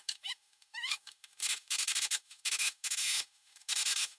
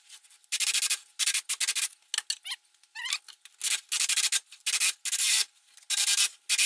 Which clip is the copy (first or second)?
first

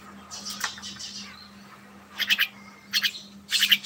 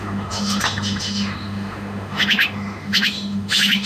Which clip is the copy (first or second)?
second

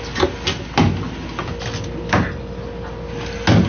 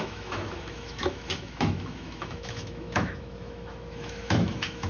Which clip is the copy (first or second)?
second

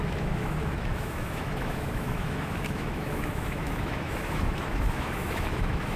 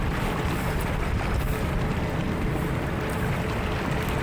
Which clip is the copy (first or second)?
first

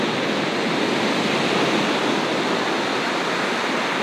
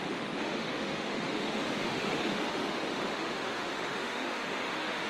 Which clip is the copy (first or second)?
second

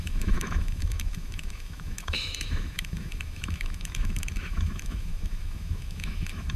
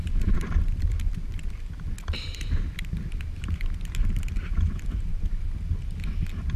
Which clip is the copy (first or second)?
first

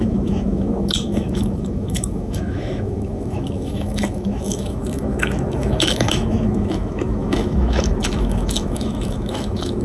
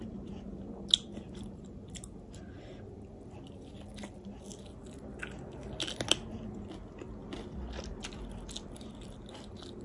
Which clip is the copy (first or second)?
first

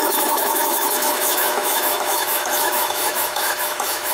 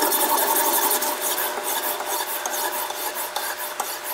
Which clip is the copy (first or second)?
first